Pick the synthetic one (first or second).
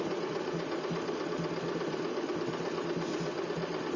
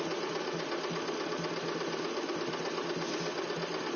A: first